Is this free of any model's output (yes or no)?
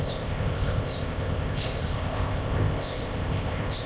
no